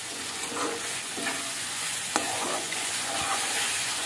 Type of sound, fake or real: fake